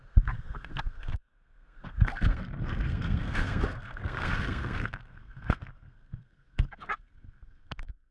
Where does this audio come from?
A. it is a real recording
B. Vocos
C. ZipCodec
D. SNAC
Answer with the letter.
D